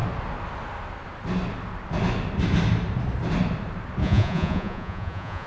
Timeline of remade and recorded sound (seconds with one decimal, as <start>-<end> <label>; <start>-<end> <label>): 0.0-4.0 recorded; 4.0-5.5 remade